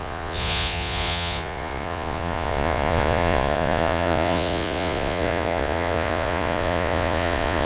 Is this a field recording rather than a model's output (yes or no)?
no